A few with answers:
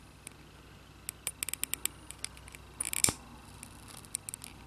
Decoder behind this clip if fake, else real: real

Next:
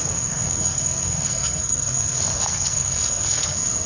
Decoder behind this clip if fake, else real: fake, codec, SNAC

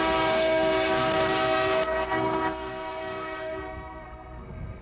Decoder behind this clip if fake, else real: fake, codec, SNAC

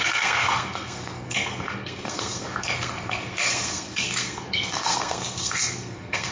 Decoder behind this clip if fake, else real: fake, codec, SNAC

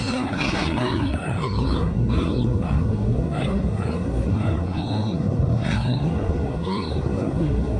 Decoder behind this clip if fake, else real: fake, codec, SNAC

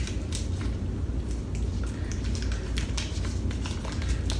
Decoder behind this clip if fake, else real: real